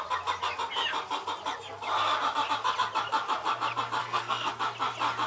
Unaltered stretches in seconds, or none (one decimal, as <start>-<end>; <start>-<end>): 0.0-4.0; 4.5-5.3